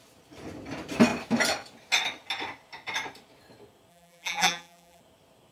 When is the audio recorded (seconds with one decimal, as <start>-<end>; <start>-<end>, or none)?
0.0-3.9; 5.0-5.5